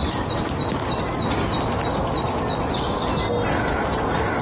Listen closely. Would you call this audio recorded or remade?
recorded